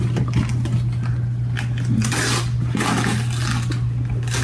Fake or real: real